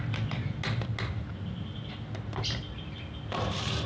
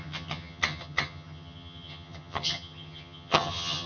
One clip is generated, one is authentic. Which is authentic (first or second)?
first